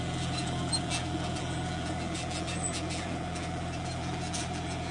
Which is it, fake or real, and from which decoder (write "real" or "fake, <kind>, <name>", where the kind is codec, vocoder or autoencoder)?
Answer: fake, vocoder, BigVGAN v2